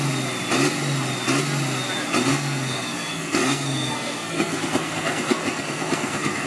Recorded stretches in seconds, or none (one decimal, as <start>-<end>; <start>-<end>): 0.0-2.3